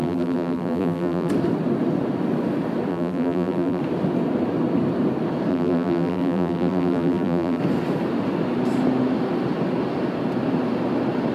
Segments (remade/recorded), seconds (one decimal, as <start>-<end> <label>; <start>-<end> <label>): 0.0-1.3 remade; 1.3-2.9 recorded; 2.9-3.8 remade; 3.8-5.5 recorded; 5.5-7.6 remade; 7.6-11.3 recorded